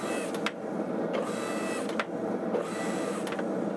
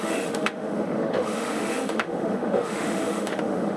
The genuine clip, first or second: first